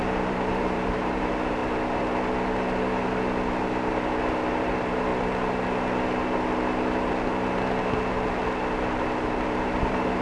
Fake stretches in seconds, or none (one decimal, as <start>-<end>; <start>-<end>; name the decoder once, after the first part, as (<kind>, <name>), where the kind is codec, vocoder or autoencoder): 0.0-1.6 (vocoder, BigVGAN v2); 4.6-5.1; 9.2-10.2